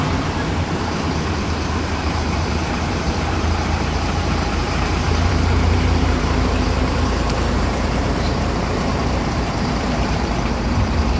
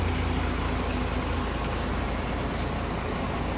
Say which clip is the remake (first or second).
first